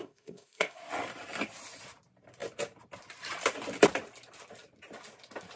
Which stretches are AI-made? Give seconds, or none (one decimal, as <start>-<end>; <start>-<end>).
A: 0.0-0.8

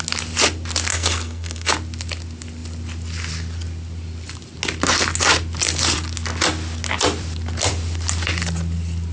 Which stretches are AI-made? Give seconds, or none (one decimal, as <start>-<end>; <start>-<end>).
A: 0.9-1.7

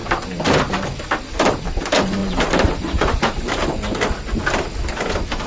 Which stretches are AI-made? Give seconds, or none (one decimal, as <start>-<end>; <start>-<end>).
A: 2.2-3.5

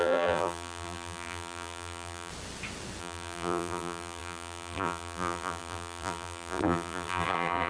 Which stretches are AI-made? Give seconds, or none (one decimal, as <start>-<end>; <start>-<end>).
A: 0.0-2.3; 3.0-7.7

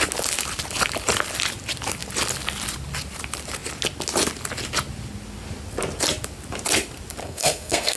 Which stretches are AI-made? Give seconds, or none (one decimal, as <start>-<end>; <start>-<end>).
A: 7.2-8.0

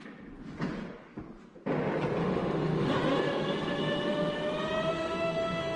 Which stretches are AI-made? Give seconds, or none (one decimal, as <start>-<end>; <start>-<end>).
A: 2.2-2.9; 4.9-5.8